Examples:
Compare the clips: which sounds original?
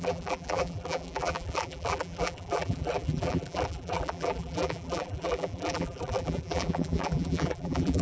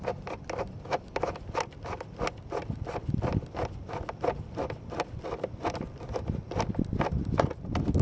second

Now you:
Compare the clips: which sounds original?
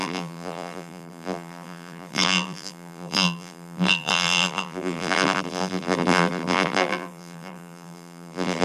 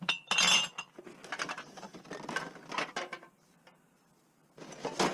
second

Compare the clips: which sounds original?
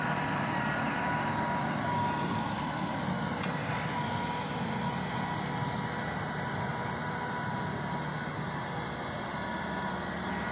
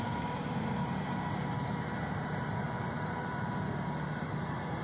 first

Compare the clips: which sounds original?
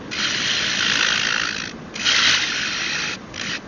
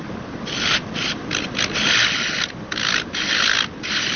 first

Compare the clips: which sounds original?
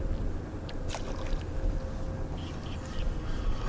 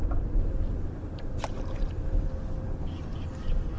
first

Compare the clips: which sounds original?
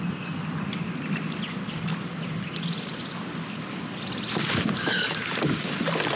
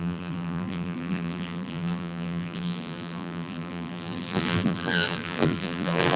first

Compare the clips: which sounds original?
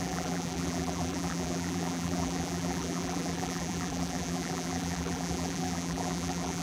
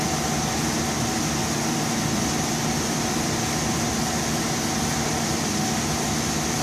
second